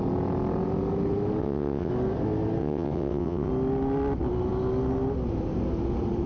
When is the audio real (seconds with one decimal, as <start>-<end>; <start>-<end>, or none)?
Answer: 0.0-1.4; 1.9-2.6; 3.5-6.3